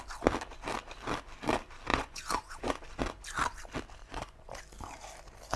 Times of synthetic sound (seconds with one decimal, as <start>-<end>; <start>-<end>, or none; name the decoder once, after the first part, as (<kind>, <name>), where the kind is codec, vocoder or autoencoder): 1.9-2.8 (vocoder, Vocos); 4.0-4.6